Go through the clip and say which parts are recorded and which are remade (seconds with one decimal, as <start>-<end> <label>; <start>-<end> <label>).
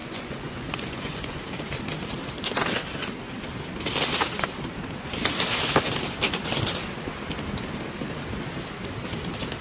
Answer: 0.0-1.4 remade; 1.4-9.6 recorded